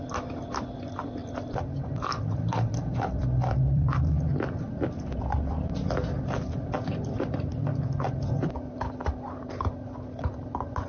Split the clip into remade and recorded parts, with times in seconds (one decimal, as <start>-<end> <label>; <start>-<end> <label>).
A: 0.0-1.2 recorded; 1.2-4.2 remade; 4.2-10.9 recorded